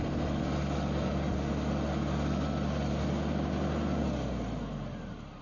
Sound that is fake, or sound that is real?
real